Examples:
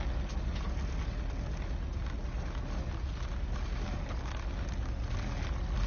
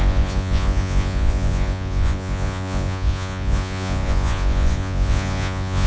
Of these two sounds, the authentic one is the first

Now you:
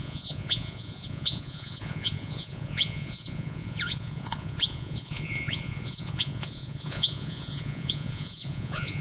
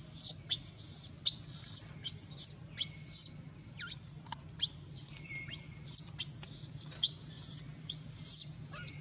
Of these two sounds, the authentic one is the second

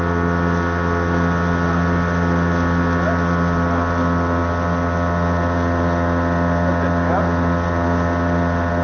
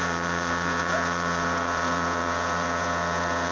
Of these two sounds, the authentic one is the first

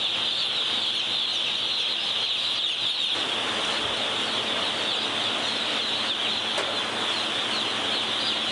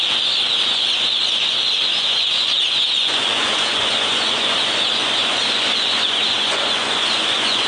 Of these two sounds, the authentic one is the first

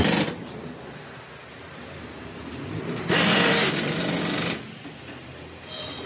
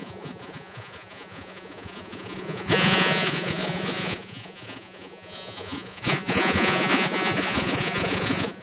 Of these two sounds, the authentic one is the first